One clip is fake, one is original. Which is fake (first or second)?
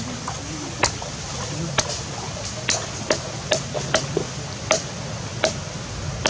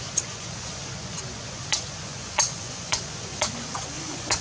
second